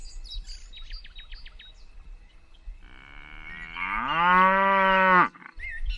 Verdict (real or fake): real